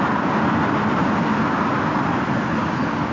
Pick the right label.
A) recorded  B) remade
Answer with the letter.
A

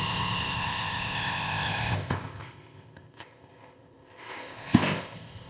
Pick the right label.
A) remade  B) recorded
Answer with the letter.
A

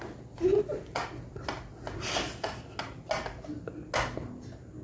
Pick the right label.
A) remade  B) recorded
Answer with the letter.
B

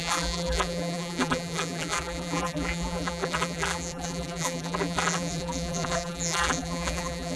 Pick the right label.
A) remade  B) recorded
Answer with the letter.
A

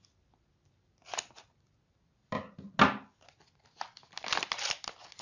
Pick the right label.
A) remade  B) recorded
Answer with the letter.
B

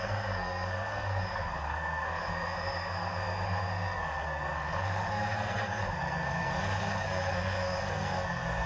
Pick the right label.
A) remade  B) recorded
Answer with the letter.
A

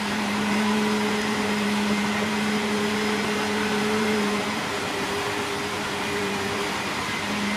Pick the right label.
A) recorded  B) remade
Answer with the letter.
B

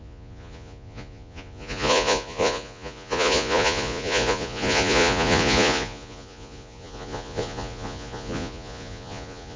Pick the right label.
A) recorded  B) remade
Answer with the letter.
B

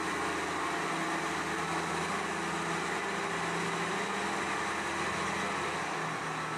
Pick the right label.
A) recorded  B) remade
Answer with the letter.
A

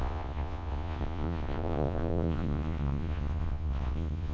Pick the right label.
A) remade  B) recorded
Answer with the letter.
A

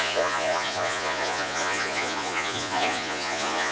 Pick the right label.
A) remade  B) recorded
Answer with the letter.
A